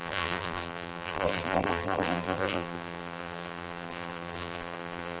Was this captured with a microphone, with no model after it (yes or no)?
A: no